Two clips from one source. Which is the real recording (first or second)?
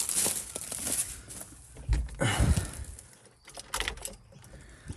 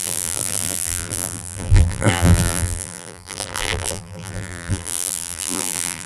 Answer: first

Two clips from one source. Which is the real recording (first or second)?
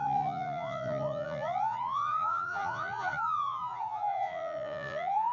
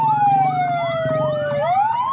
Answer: second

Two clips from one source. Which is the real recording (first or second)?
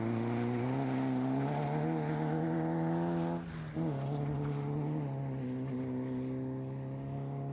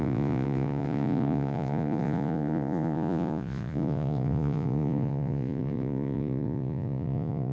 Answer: first